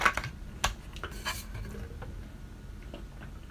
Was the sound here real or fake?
real